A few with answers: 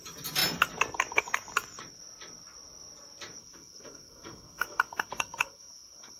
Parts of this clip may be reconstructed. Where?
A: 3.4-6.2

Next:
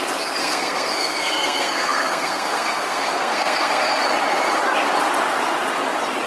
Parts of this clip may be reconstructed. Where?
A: 0.4-3.9

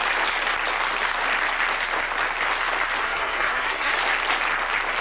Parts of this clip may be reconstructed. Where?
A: 3.0-3.9

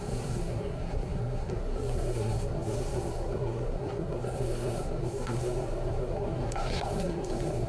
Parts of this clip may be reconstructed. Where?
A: 0.0-7.7

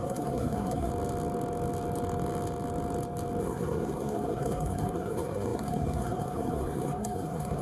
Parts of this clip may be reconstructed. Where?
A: 0.0-0.9; 3.4-7.6

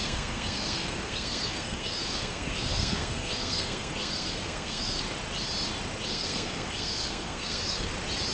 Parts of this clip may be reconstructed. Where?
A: 0.0-5.0; 6.1-7.9

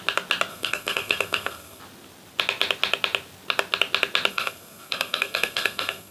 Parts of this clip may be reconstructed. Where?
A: 0.5-1.8; 4.3-6.1